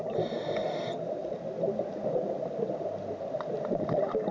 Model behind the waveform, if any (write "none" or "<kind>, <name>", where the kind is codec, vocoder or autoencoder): none